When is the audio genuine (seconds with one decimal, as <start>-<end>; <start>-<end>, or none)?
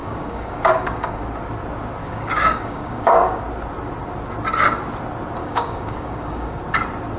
1.2-2.0; 3.4-5.4; 6.6-7.2